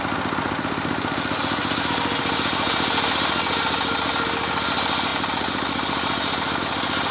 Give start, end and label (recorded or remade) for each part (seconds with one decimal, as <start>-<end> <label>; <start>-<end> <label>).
0.0-7.1 recorded